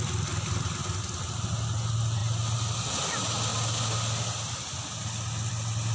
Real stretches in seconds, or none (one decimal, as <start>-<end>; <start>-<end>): 0.0-5.9